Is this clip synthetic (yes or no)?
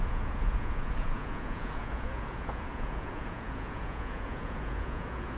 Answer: yes